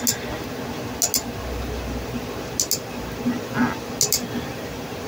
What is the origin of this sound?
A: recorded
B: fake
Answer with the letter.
A